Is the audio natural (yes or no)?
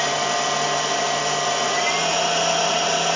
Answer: yes